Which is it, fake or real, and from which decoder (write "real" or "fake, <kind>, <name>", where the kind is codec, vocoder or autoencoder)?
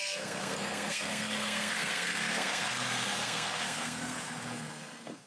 fake, codec, SNAC